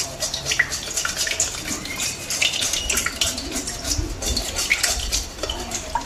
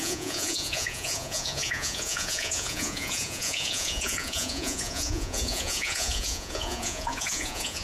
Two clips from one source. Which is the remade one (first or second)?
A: second